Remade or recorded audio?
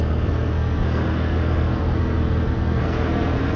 remade